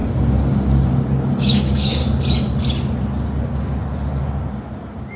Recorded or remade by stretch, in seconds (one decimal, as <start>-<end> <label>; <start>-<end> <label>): 0.0-1.4 recorded; 1.4-2.0 remade; 2.0-5.2 recorded